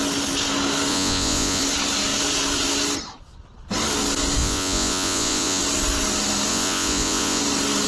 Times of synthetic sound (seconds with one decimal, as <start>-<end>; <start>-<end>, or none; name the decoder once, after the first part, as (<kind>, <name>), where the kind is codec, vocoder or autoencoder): 0.9-1.6 (vocoder, Vocos); 4.4-5.6; 6.5-7.4